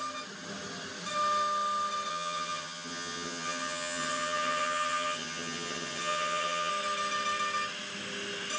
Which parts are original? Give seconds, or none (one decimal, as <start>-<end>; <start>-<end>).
0.0-2.1; 6.7-8.6